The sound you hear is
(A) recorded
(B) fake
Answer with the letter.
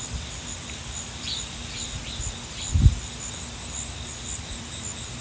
B